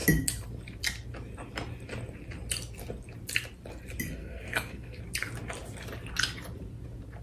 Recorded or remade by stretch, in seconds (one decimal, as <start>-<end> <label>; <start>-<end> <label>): 0.0-4.2 recorded; 4.2-5.0 remade; 5.0-7.2 recorded